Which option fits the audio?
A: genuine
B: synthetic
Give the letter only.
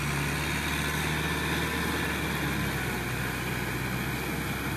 A